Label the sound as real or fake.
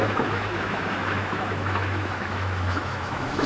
fake